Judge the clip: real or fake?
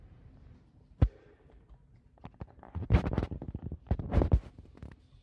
fake